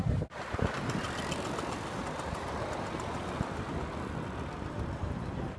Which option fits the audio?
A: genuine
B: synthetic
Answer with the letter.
A